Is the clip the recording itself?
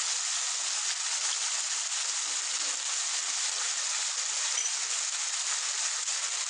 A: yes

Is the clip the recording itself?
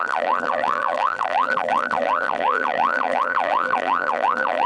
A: no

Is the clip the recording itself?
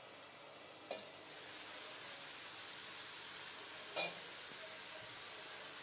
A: yes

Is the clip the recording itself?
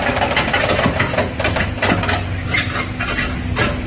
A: yes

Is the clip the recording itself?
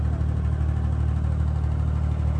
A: yes